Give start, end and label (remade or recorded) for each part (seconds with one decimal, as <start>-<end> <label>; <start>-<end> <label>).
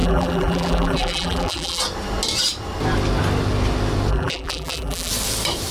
0.0-1.8 remade; 1.8-4.1 recorded; 4.1-5.1 remade; 5.1-5.7 recorded